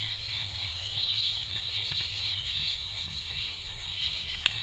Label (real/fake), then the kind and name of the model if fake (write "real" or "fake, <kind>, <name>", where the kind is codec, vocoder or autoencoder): fake, codec, SNAC